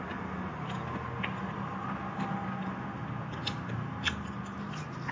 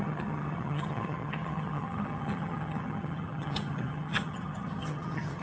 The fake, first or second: second